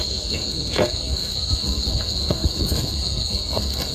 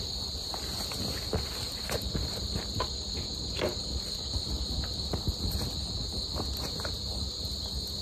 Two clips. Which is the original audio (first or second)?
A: second